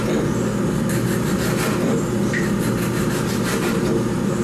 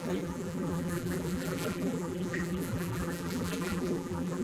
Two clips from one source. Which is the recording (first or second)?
first